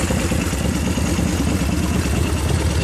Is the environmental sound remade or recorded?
recorded